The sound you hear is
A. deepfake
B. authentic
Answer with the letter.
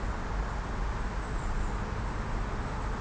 B